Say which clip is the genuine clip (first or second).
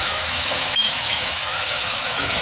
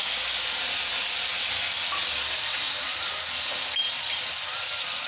second